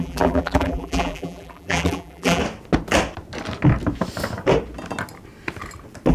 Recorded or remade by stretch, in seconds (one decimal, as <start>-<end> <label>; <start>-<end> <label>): 0.0-2.4 remade; 2.4-6.1 recorded